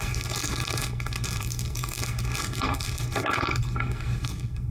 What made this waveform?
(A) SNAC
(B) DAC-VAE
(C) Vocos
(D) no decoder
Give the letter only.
A